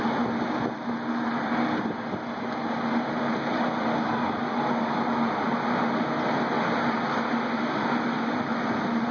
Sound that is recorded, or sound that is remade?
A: recorded